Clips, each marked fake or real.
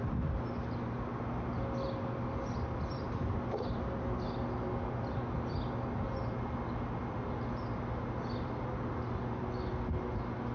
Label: real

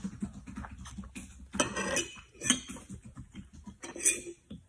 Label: real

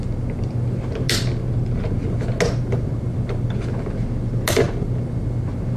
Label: real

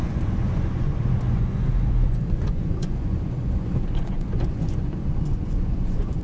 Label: fake